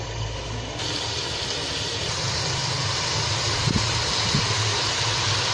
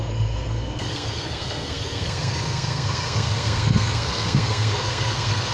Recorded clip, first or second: first